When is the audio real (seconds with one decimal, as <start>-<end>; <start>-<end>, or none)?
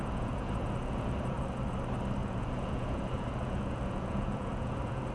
1.5-2.2